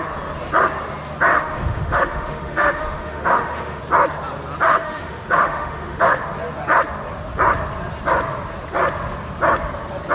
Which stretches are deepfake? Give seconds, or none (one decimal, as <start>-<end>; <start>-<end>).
1.3-3.8; 4.7-6.2